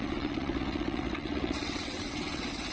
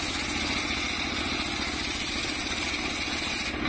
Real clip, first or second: second